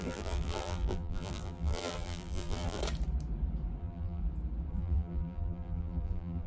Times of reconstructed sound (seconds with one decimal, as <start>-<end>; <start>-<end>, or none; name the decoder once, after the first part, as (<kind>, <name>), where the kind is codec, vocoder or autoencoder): 0.0-2.8 (vocoder, BigVGAN v2); 3.8-4.2; 4.7-6.5